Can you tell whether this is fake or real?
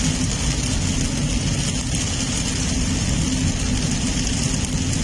real